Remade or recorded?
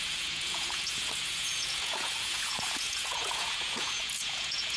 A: remade